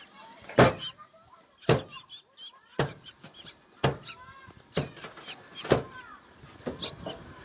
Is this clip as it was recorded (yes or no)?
yes